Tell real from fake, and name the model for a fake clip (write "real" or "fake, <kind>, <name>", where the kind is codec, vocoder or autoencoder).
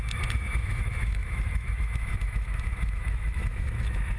fake, autoencoder, DAC-VAE